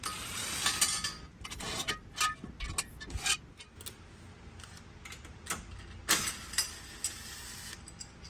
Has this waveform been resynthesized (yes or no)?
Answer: no